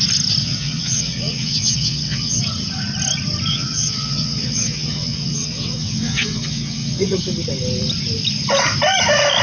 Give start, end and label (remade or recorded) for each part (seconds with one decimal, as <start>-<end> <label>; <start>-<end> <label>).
0.0-0.4 recorded; 0.4-2.4 remade; 2.4-3.5 recorded; 3.5-7.2 remade; 7.2-9.4 recorded